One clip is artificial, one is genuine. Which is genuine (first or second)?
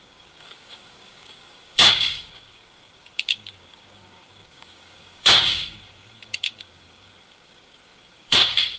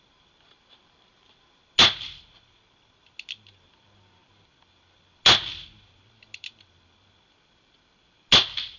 second